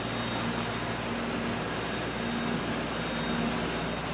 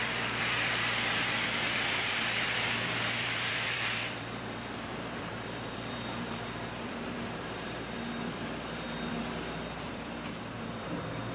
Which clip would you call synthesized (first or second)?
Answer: second